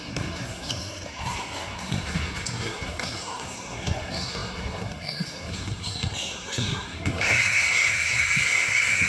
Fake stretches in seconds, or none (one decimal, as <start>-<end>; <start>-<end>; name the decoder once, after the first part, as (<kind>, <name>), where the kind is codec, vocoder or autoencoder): 0.0-9.1 (codec, SNAC)